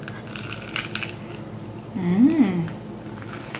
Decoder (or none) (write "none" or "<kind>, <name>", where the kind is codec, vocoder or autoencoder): none